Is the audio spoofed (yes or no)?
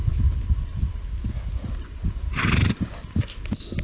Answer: no